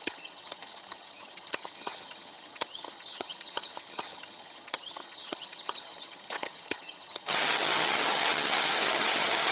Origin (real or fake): fake